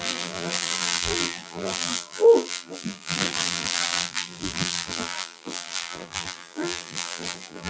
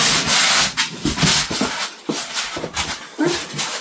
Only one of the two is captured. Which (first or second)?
second